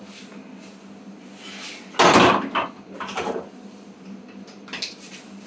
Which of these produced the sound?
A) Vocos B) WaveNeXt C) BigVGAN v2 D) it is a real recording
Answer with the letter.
D